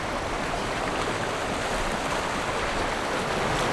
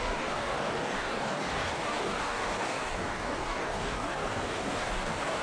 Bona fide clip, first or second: first